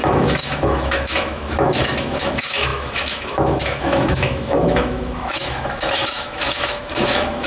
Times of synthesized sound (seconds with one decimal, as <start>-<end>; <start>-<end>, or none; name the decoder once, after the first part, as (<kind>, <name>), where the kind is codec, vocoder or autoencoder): 0.0-7.5 (autoencoder, DAC-VAE)